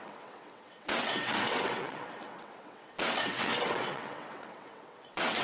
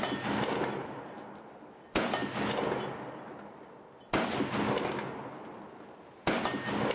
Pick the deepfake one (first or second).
first